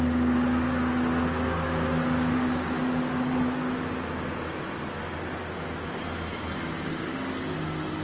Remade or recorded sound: recorded